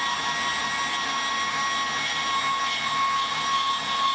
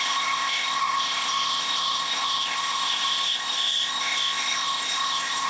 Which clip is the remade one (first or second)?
second